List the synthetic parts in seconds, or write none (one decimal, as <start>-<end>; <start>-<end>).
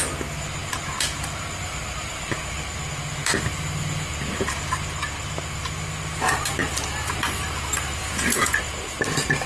8.0-8.6